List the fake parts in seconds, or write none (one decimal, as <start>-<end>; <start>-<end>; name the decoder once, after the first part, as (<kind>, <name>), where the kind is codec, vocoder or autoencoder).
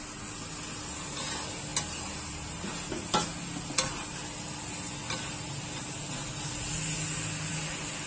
none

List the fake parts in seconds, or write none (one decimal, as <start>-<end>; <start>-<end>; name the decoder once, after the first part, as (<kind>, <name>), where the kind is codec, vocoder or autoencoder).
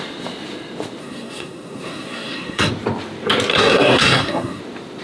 1.0-2.7 (codec, SNAC); 3.5-4.6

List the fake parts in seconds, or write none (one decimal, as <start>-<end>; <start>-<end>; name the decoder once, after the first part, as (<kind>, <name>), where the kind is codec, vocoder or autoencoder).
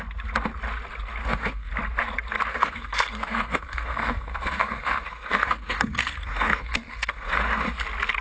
1.2-1.7 (codec, SNAC); 2.5-7.4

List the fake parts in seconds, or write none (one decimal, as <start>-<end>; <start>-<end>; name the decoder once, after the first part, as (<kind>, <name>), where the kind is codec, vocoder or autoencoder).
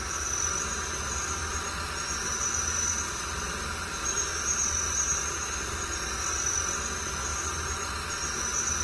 none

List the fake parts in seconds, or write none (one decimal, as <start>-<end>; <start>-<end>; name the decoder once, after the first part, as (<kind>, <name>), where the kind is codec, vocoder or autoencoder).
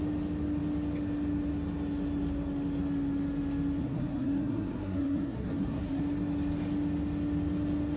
3.8-6.0 (codec, SNAC)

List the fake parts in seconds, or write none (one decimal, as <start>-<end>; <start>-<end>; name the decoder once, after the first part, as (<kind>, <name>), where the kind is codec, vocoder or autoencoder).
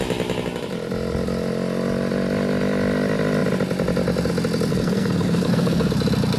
4.7-5.9 (codec, SNAC)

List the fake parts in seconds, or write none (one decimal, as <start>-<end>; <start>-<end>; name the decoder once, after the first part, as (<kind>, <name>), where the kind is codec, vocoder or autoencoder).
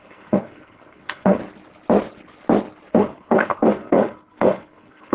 0.0-1.4 (codec, SNAC); 2.9-5.1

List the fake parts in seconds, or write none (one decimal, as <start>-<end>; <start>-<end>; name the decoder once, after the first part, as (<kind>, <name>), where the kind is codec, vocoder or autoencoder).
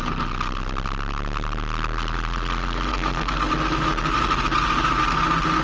2.9-3.5 (codec, SNAC)